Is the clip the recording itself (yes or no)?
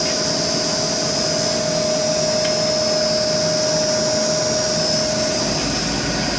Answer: yes